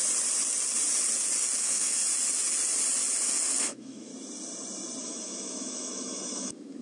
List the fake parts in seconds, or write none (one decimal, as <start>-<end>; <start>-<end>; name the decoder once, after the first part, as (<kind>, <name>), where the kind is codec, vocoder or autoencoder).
1.6-2.0 (autoencoder, DAC-VAE); 3.6-4.1; 5.0-6.8

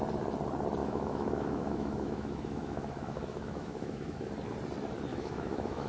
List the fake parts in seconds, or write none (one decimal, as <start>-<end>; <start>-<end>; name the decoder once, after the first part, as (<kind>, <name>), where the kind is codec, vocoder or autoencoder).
0.8-4.3 (autoencoder, DAC-VAE); 5.1-5.9

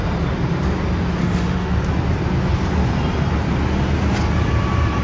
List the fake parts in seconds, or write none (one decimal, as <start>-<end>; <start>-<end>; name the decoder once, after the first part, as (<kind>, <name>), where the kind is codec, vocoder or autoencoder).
1.2-1.8 (autoencoder, DAC-VAE)

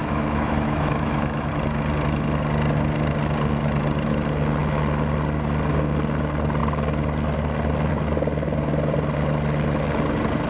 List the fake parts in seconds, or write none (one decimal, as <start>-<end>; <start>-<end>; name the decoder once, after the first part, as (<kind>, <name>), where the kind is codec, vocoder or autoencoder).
0.0-1.5 (autoencoder, DAC-VAE)